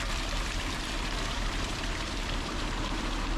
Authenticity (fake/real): fake